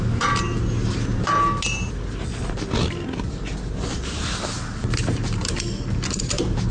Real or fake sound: real